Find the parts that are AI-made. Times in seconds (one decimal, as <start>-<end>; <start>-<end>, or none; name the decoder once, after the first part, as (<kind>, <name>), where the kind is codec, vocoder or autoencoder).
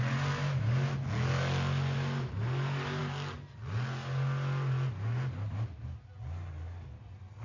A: none